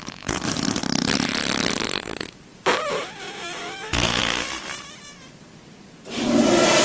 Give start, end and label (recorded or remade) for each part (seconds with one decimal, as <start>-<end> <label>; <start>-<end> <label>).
0.0-6.8 remade